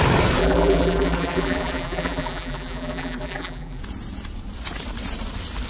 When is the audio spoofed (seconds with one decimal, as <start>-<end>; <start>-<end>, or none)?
0.4-3.8